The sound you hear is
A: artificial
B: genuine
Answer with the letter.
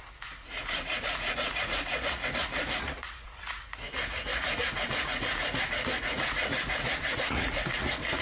A